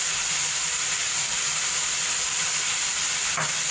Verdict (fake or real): real